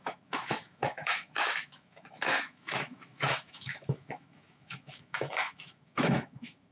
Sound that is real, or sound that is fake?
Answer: fake